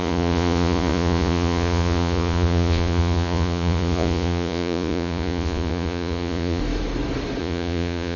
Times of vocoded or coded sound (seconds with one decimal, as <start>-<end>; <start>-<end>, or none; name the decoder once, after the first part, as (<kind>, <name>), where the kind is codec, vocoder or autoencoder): 0.0-6.6 (vocoder, Vocos); 7.4-8.2